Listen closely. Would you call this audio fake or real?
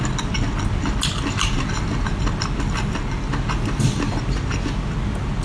real